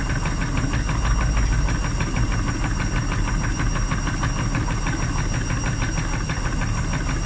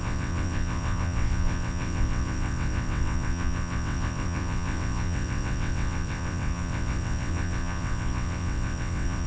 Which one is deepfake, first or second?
second